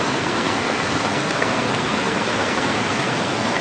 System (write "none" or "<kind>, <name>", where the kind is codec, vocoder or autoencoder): codec, SNAC